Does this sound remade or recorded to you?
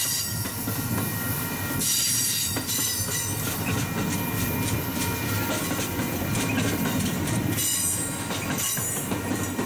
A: recorded